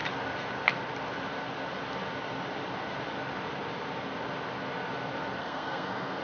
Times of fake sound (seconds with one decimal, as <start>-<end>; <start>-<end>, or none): 5.4-6.2